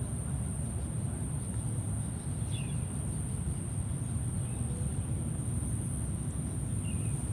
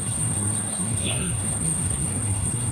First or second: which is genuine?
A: first